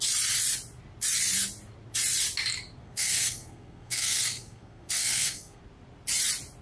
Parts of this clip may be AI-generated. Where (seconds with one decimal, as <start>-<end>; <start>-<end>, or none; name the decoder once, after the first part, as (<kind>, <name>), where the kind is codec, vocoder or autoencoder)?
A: 2.8-5.6 (codec, SNAC)